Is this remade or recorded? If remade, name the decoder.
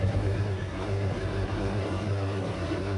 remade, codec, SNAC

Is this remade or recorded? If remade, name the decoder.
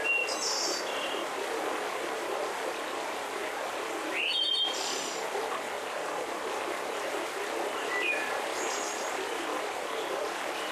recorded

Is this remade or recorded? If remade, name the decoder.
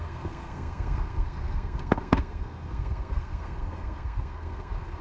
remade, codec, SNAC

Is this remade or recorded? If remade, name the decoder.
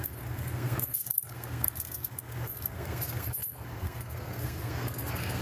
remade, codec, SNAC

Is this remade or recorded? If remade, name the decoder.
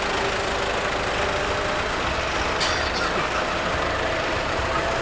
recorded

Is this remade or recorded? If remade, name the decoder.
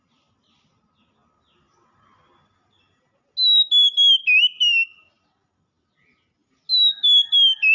recorded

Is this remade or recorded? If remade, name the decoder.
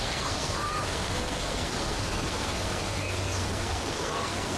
remade, codec, SNAC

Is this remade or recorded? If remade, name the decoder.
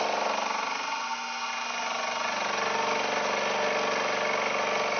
recorded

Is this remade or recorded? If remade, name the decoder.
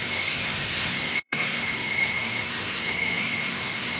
remade, codec, SNAC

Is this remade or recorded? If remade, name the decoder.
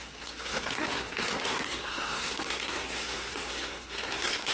remade, codec, SNAC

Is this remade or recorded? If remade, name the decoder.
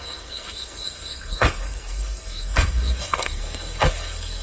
remade, codec, SNAC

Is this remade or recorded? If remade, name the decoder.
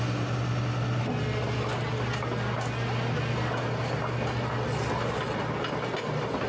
recorded